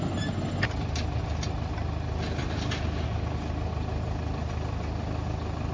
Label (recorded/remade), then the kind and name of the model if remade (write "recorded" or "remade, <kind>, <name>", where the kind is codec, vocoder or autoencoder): recorded